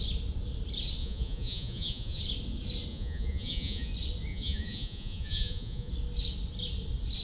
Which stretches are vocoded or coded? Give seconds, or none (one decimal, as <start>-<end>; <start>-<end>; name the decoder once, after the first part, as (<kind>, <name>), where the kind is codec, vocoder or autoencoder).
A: 1.0-2.2 (vocoder, Vocos); 2.9-3.9; 4.3-5.9